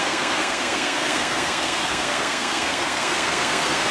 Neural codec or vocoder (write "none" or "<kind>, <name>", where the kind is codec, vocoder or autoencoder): codec, SNAC